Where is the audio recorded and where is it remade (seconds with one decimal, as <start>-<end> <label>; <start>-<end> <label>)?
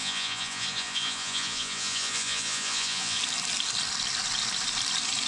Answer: 0.0-3.2 remade; 3.2-5.3 recorded